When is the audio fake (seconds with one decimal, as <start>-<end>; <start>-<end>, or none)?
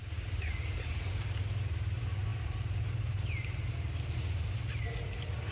none